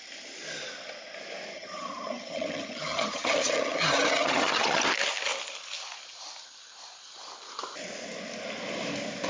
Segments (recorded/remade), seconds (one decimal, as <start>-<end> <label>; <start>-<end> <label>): 0.0-1.5 recorded; 1.5-4.8 remade; 4.8-9.3 recorded